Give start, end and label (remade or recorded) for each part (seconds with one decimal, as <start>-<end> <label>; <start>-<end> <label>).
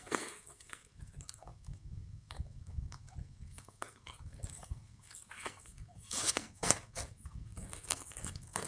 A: 0.0-8.7 remade